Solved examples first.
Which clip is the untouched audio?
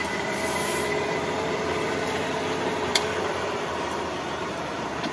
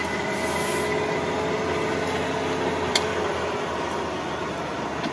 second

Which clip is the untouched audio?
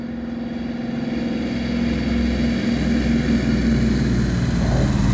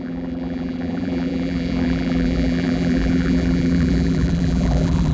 first